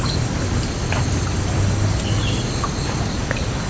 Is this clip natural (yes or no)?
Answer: yes